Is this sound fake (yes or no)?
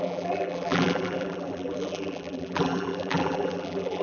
yes